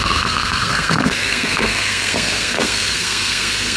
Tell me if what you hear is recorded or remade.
remade